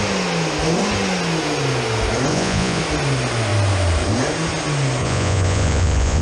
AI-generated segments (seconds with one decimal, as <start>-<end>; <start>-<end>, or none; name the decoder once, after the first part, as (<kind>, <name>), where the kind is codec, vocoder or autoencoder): 2.3-2.8 (vocoder, Vocos); 5.0-6.2